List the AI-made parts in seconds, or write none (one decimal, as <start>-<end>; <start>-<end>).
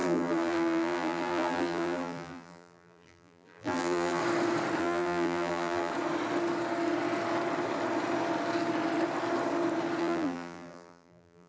0.0-4.2; 4.8-5.9; 10.0-11.5